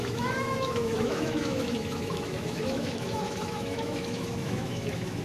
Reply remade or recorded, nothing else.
remade